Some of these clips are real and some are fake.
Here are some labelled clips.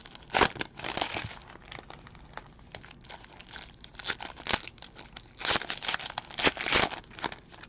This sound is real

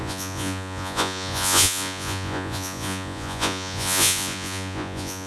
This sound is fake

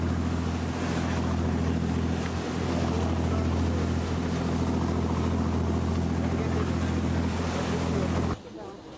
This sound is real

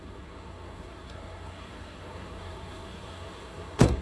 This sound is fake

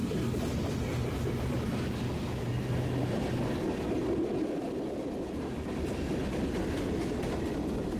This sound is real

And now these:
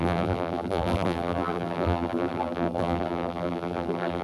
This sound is fake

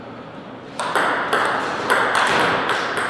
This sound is real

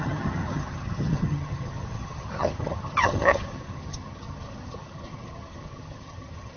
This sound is fake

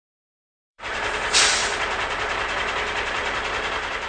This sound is fake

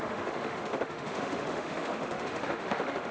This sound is fake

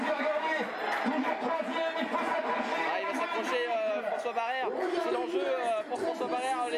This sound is real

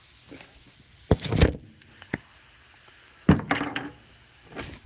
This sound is real